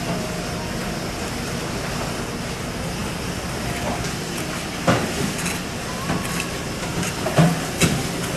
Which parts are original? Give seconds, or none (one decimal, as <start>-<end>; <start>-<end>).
0.0-3.0; 4.3-6.9; 7.5-8.4